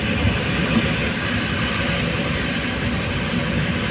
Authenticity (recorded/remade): recorded